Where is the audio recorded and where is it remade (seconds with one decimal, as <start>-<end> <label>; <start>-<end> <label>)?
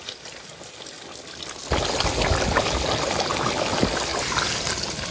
0.0-5.1 recorded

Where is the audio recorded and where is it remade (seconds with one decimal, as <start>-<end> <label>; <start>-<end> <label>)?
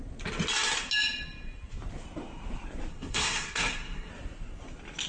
0.0-2.9 recorded; 2.9-4.1 remade; 4.1-5.1 recorded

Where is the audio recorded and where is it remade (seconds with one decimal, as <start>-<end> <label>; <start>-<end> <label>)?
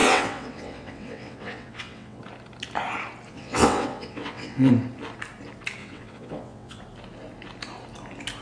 0.0-2.2 remade; 2.2-3.3 recorded; 3.3-4.7 remade; 4.7-5.8 recorded; 5.8-6.8 remade; 6.8-8.4 recorded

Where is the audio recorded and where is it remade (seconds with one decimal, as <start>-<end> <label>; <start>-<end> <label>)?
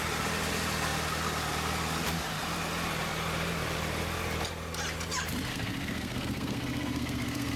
0.0-5.5 recorded; 5.5-7.6 remade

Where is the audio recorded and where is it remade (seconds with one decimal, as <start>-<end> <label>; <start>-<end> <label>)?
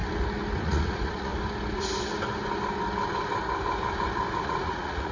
0.0-0.6 recorded; 0.6-1.3 remade; 1.3-4.4 recorded; 4.4-5.1 remade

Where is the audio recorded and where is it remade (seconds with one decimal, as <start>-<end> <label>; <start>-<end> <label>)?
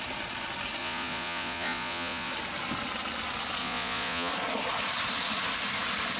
0.0-0.8 recorded; 0.8-2.3 remade; 2.3-3.6 recorded; 3.6-4.3 remade; 4.3-6.2 recorded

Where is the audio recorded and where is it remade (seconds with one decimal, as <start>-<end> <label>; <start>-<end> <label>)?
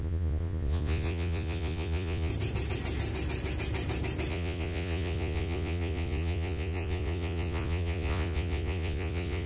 0.0-2.3 remade; 2.3-4.3 recorded; 4.3-9.5 remade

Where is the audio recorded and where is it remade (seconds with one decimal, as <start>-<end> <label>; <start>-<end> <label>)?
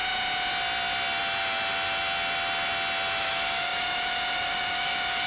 0.0-3.2 recorded; 3.2-5.3 remade